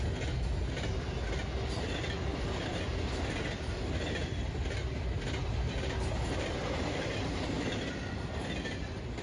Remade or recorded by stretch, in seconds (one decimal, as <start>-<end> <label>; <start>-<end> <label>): 0.0-2.3 recorded; 2.3-2.8 remade; 2.8-9.2 recorded

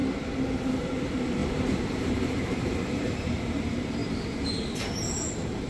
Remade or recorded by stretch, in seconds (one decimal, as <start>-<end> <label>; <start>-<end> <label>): 0.0-0.6 recorded; 0.6-5.7 remade